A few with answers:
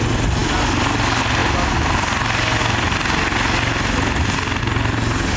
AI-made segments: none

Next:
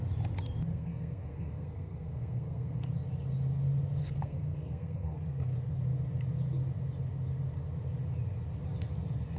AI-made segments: 0.7-2.9 (codec, SNAC); 4.0-5.5

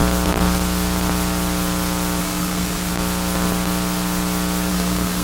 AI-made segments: 2.2-2.9 (codec, SNAC); 4.7-5.2

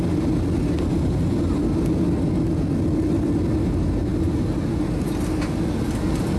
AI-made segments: none

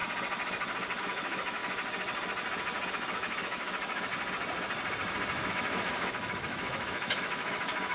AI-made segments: 1.0-1.6 (autoencoder, DAC-VAE); 2.9-4.1; 5.5-7.9

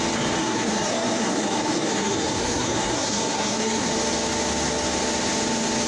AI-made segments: 0.4-3.9 (codec, SNAC)